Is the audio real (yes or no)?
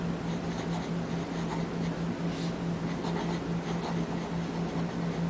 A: yes